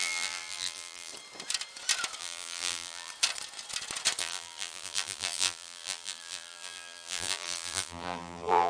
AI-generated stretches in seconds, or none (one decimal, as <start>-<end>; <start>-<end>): 0.0-1.1; 2.2-3.1; 4.2-8.7